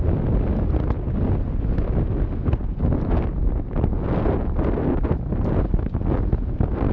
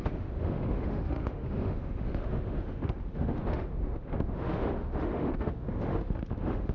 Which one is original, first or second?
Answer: first